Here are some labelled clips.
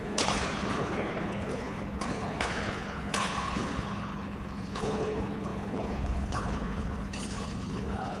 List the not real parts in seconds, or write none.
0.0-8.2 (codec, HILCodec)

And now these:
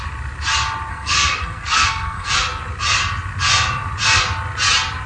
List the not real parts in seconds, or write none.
0.9-2.3 (codec, SNAC)

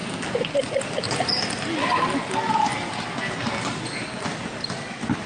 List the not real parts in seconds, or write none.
none